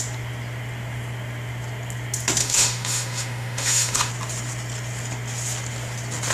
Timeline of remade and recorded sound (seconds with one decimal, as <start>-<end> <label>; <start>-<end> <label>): 0.0-2.4 recorded; 2.4-4.1 remade; 4.1-6.3 recorded